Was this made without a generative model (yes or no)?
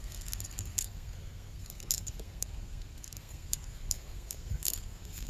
no